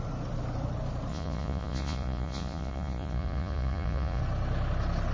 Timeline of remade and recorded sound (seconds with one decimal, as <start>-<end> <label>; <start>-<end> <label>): 0.0-1.1 recorded; 1.1-4.2 remade; 4.2-5.1 recorded

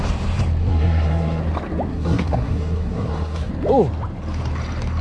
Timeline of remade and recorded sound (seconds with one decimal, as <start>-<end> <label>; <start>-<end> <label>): 0.0-0.6 recorded; 0.6-1.4 remade; 1.4-1.9 recorded; 1.9-3.5 remade; 3.5-5.0 recorded

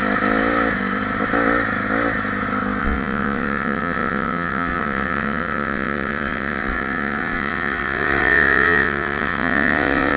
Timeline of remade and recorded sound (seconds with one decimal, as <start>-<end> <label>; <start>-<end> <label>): 0.0-2.8 recorded; 2.8-10.2 remade

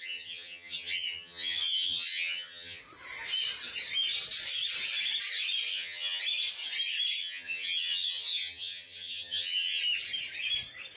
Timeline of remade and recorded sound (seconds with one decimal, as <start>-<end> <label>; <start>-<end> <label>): 0.0-2.8 remade; 2.8-5.7 recorded; 5.7-6.2 remade; 6.2-7.2 recorded; 7.2-9.8 remade; 9.8-11.0 recorded